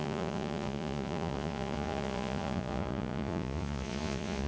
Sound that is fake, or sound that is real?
fake